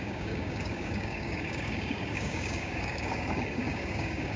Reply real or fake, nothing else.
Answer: fake